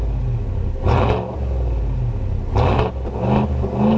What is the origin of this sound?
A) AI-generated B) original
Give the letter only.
B